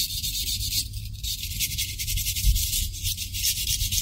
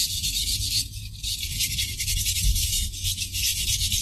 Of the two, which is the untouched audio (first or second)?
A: first